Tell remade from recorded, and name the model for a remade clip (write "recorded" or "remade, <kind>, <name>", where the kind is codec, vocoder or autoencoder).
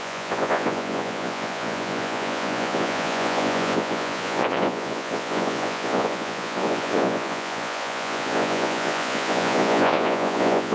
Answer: remade, vocoder, Vocos